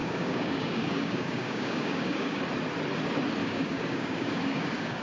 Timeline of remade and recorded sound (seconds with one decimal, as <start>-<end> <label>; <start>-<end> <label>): 0.0-2.4 remade; 2.4-3.4 recorded; 3.4-5.0 remade